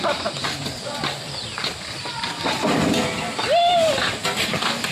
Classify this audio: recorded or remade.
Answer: recorded